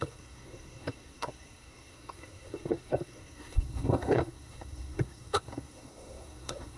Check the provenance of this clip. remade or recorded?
remade